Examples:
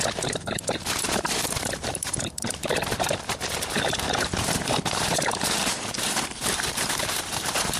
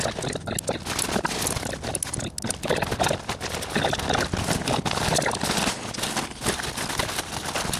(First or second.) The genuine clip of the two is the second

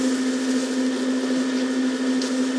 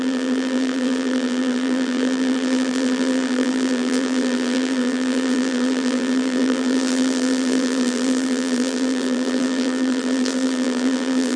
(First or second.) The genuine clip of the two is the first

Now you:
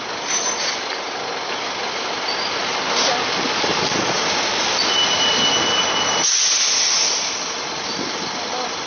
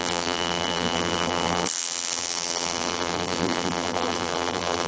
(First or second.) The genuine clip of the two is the first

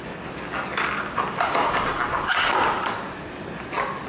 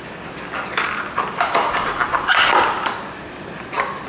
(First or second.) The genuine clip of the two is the first